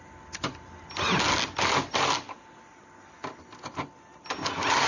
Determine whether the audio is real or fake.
real